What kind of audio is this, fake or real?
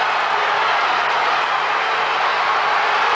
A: real